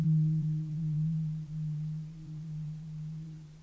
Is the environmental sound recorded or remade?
remade